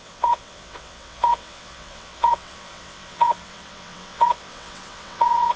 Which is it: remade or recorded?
remade